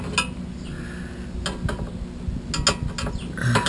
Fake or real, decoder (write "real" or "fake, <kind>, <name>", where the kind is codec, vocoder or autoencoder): real